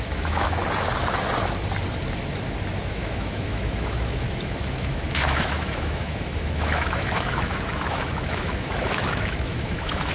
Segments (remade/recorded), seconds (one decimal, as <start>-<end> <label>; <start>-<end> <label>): 0.0-0.6 remade; 0.6-2.9 recorded; 2.9-10.1 remade